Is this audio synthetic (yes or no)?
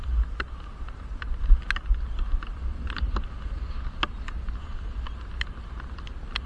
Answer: no